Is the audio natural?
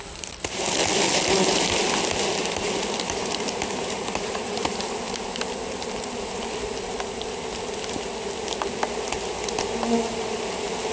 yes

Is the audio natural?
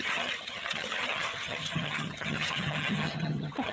no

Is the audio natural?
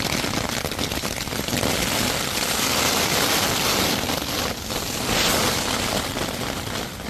yes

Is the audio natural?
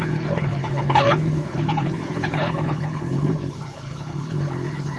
no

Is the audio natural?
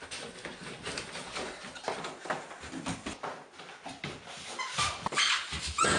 yes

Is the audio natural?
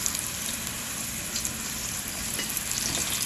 yes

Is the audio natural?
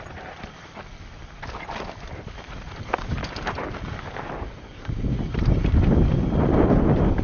yes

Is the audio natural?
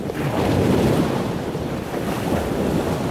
yes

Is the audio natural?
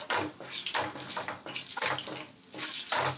yes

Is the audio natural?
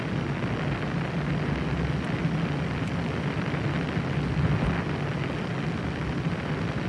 yes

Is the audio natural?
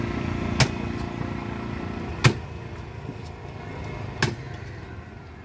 yes